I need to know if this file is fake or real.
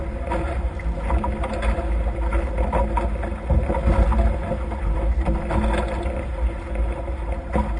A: real